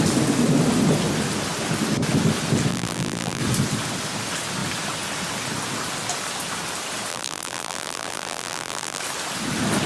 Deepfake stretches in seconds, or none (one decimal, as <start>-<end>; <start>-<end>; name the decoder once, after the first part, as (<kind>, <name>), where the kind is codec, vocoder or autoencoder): 2.7-3.4 (vocoder, BigVGAN v2); 7.1-9.0